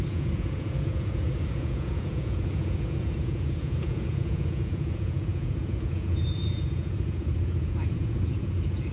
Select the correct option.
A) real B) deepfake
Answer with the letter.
B